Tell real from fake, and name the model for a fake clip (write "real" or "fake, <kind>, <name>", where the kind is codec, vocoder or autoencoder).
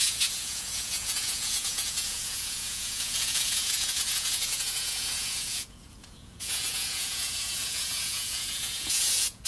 fake, vocoder, Vocos